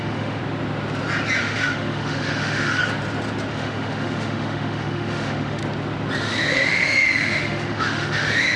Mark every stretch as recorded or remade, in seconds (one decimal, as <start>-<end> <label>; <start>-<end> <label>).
0.0-0.4 remade; 0.4-1.4 recorded; 1.4-2.8 remade; 2.8-3.5 recorded; 3.5-5.6 remade; 5.6-6.2 recorded; 6.2-8.6 remade